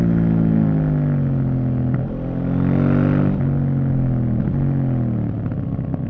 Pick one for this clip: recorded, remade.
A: recorded